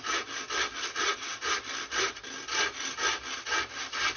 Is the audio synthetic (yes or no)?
no